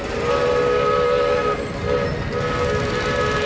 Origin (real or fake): real